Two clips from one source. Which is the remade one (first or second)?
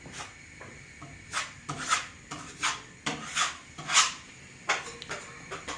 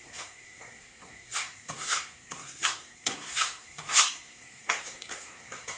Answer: second